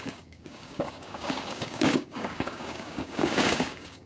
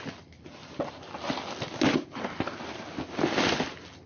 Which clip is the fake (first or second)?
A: first